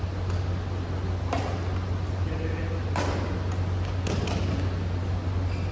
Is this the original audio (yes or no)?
yes